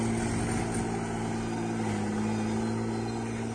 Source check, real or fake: real